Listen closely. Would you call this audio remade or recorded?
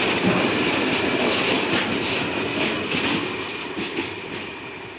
recorded